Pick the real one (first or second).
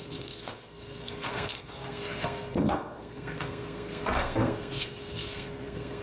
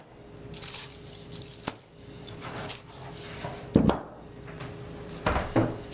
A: second